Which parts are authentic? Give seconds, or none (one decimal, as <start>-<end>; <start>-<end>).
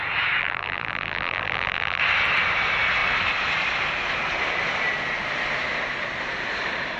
0.0-0.4; 2.0-7.0